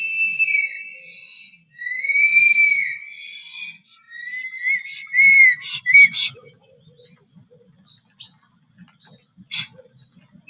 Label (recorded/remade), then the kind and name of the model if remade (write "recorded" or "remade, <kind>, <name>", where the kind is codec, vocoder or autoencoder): recorded